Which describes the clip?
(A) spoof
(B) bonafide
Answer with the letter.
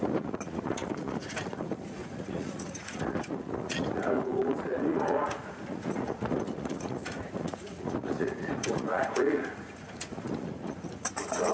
A